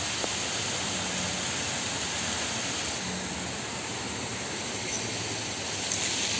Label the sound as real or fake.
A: real